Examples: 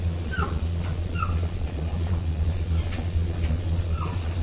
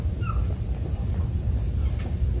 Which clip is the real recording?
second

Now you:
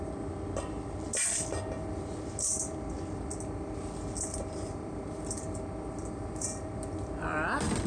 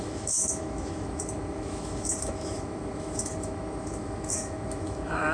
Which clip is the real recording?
first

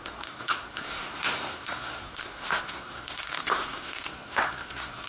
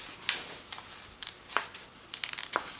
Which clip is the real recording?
second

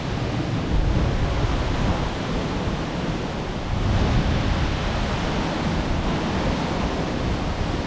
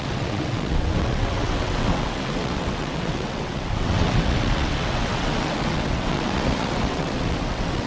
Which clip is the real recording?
first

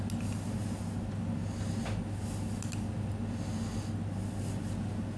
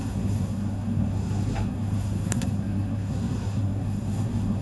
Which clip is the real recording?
first